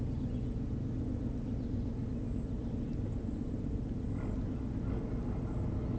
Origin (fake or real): real